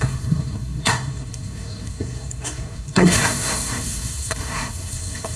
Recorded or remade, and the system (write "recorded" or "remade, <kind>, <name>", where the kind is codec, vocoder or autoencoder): remade, codec, SNAC